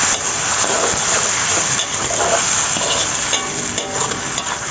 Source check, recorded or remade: recorded